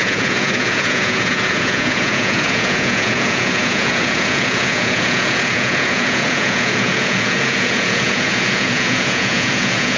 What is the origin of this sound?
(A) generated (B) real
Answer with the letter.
A